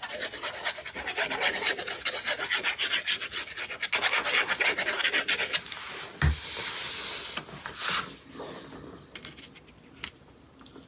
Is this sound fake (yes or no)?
no